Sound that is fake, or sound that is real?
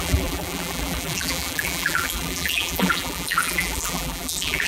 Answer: fake